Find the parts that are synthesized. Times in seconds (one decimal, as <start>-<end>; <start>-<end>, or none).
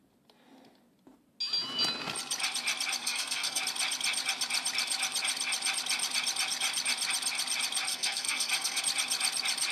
3.0-3.6; 7.9-8.8